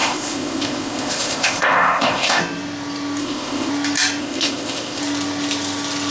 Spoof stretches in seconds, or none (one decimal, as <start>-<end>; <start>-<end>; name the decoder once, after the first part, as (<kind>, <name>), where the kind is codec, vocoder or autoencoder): 0.0-2.4 (codec, ZipCodec); 3.2-3.7; 4.2-5.0